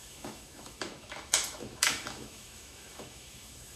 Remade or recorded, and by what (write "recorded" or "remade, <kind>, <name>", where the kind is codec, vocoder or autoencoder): remade, autoencoder, DAC-VAE